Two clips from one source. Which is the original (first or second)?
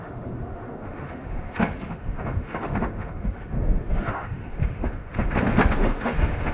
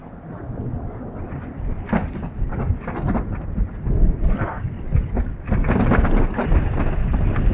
second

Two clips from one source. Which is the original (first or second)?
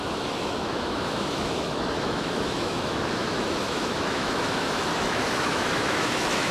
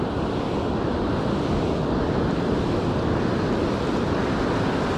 second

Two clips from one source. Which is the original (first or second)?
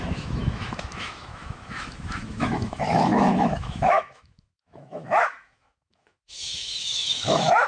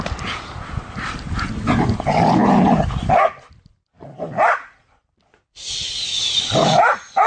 second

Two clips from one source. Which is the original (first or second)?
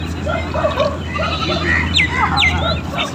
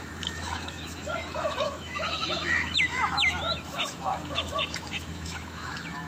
first